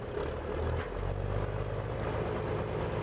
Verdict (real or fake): real